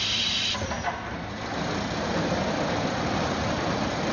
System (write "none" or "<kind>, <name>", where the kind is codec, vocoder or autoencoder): none